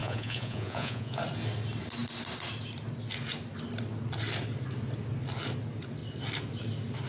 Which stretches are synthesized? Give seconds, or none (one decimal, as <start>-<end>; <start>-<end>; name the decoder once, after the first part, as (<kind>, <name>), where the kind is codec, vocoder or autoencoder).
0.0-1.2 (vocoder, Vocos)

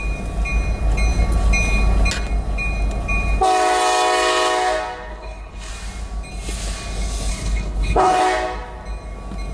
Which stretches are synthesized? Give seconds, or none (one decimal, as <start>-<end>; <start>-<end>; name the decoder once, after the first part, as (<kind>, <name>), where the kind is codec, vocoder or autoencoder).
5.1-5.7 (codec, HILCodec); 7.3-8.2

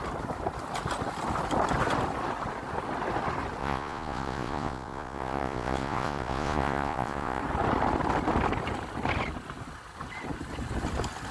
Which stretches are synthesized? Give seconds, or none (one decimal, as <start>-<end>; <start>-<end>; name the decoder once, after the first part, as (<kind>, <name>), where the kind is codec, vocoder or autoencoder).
3.6-7.4 (vocoder, Vocos)